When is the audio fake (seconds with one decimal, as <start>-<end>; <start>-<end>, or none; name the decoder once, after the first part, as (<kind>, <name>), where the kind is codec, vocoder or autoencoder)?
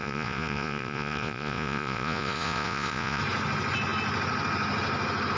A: 0.0-3.2 (vocoder, Vocos)